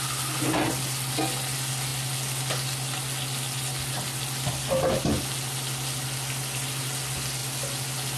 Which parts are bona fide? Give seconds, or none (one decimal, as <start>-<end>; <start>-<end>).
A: 0.0-8.2